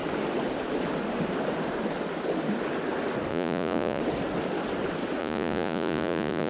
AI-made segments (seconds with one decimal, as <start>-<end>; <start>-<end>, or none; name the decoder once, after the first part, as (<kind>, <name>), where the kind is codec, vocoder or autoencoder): 3.3-4.0 (vocoder, Vocos); 5.2-6.5